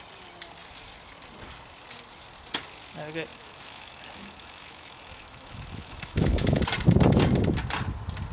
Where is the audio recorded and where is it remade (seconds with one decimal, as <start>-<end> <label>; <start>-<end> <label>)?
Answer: 0.0-3.3 recorded; 3.3-6.6 remade; 6.6-8.3 recorded